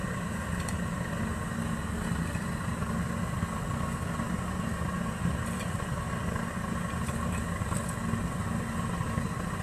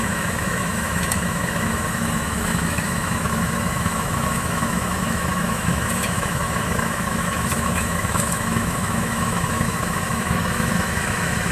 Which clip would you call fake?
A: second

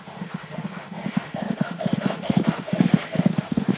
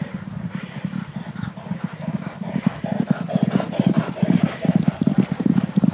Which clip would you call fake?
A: first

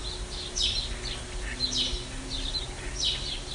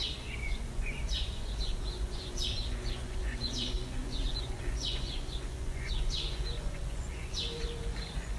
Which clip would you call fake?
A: second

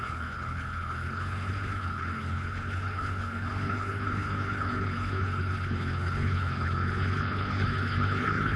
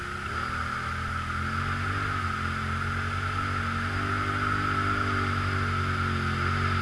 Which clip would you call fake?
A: first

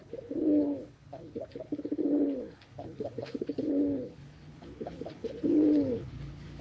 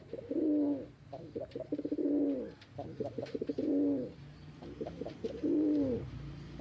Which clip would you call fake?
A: first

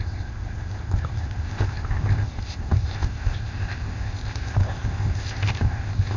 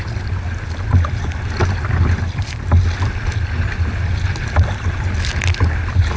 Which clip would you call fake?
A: first